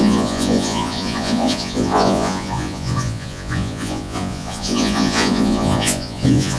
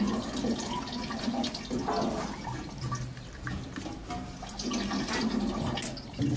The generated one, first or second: first